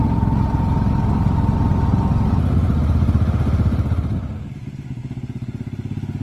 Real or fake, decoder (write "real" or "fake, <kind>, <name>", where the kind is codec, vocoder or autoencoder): real